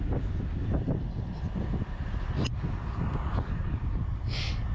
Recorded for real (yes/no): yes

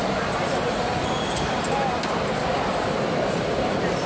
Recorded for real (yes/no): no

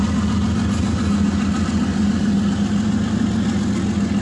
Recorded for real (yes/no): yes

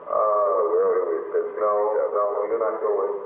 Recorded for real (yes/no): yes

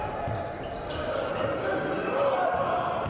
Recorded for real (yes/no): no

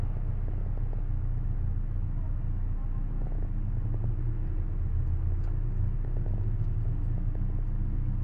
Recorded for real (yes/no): yes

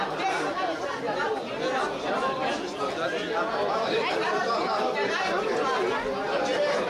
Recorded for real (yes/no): yes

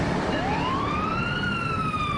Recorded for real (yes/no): no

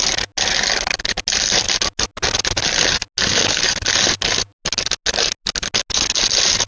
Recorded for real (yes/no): yes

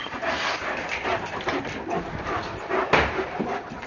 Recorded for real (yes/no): no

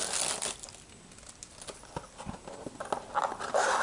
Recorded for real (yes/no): yes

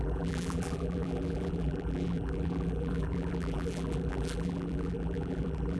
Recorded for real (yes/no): no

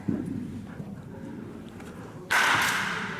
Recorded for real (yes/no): yes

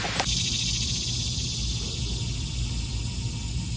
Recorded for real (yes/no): yes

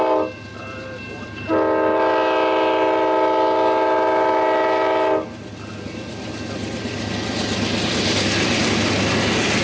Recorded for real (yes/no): yes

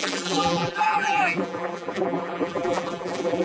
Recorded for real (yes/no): no